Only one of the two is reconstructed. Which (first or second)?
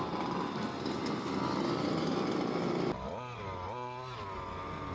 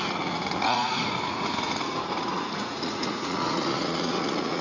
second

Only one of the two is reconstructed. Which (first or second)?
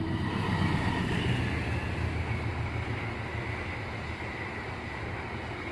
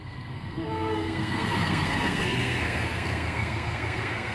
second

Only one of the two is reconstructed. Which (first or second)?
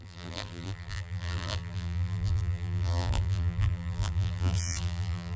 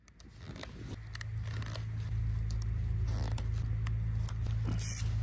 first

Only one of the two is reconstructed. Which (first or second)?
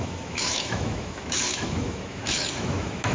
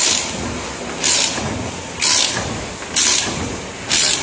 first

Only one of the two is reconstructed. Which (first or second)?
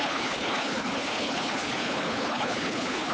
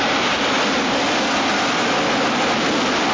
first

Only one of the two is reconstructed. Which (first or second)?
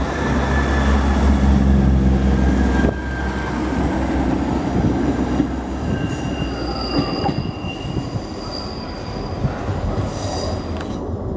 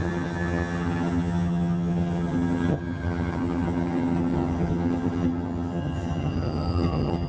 second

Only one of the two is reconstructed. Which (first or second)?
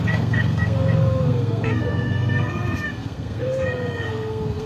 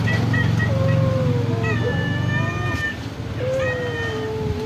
first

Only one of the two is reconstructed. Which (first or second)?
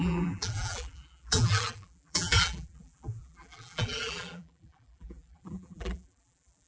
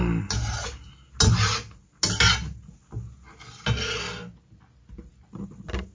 first